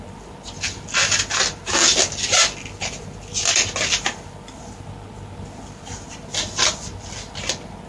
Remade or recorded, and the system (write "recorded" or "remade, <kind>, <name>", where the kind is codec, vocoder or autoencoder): recorded